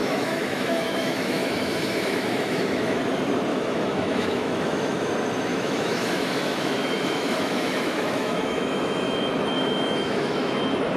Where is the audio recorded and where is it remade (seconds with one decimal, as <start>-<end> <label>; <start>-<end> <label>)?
0.0-3.0 remade; 3.0-3.5 recorded; 3.5-5.1 remade; 5.1-5.5 recorded; 5.5-10.5 remade; 10.5-11.0 recorded